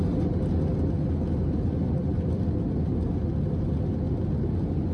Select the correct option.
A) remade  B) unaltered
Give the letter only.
B